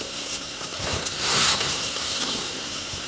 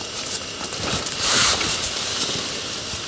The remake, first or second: first